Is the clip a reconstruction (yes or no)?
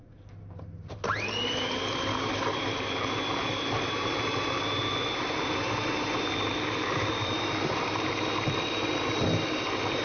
yes